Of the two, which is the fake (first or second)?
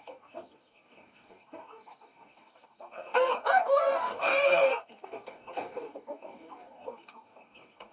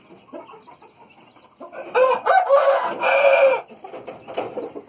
first